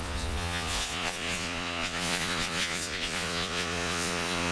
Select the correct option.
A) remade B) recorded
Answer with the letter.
A